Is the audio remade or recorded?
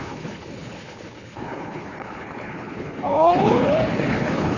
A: remade